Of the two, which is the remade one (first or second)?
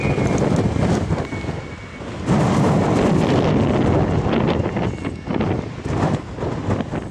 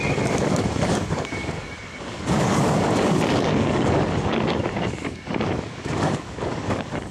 second